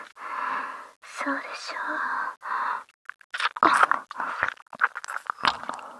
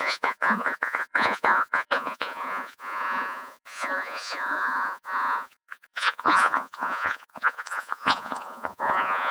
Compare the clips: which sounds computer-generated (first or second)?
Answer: second